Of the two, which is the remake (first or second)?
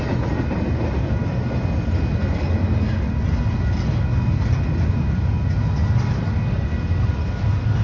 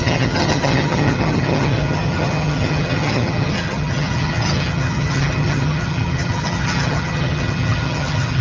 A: second